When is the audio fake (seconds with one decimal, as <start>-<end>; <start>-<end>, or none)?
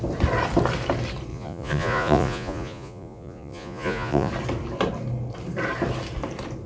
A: 1.3-4.3